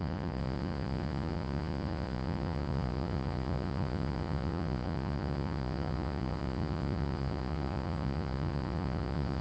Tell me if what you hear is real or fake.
fake